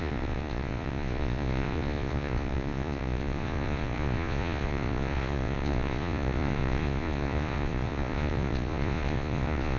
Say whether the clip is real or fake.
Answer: fake